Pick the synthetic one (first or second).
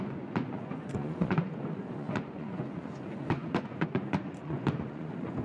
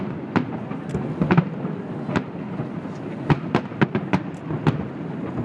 first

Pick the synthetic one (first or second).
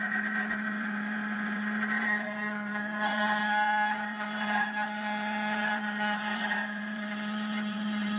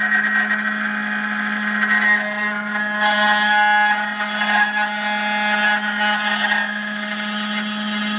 first